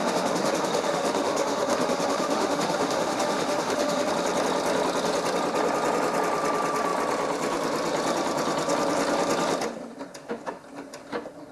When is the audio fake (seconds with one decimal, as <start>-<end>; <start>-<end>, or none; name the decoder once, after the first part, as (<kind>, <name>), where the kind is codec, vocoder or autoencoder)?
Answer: 0.0-4.1 (autoencoder, DAC-VAE)